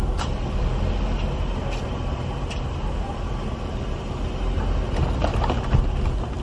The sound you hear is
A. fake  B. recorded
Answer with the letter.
B